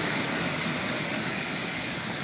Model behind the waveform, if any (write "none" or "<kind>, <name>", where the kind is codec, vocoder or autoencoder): codec, DAC